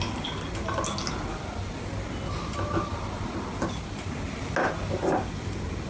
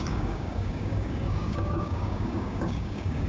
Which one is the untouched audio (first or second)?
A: first